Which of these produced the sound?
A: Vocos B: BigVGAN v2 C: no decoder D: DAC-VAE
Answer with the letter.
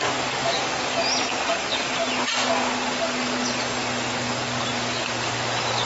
C